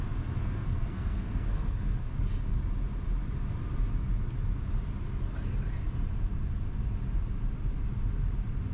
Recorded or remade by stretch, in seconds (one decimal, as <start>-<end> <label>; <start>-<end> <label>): 0.0-0.4 recorded; 0.4-2.2 remade; 2.2-8.7 recorded